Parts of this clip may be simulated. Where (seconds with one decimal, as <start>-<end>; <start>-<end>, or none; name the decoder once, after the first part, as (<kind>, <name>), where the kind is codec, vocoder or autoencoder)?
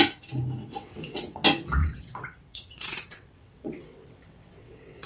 0.6-1.4 (vocoder, WaveNeXt); 1.8-5.1